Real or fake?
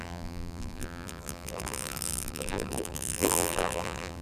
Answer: fake